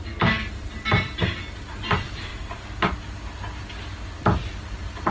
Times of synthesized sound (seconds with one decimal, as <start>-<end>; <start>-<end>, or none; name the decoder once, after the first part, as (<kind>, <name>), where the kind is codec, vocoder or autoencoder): none